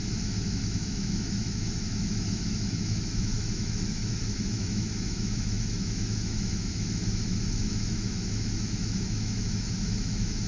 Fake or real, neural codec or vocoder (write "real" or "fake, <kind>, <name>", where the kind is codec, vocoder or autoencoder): fake, autoencoder, DAC-VAE